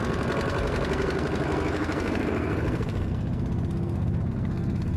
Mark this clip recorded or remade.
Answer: remade